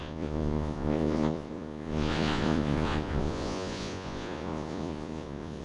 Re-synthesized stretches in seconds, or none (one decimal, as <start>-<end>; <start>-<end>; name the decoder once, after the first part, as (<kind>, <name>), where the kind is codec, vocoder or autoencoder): 0.0-5.6 (vocoder, Vocos)